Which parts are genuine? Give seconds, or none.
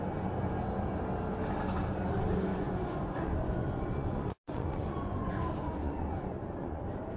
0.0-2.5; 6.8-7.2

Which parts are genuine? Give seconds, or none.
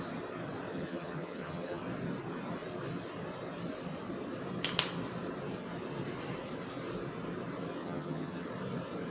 0.0-0.7; 1.8-7.8; 8.5-9.1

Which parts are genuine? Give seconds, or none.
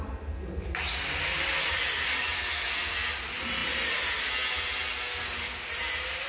0.0-6.3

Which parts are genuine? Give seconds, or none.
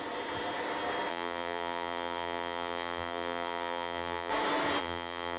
0.0-1.1; 4.3-4.8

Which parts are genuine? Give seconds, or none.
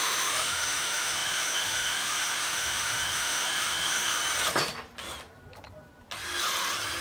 4.2-7.0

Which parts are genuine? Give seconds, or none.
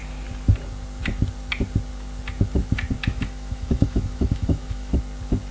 0.0-3.0; 4.9-5.5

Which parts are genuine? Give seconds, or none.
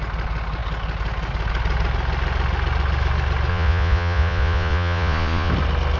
0.0-3.5; 5.5-6.0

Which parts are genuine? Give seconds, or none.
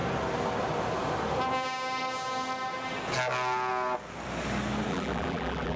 0.0-4.9